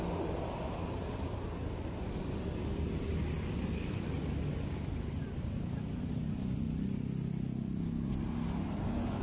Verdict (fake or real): real